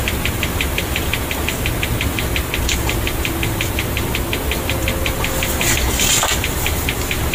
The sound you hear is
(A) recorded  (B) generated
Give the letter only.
A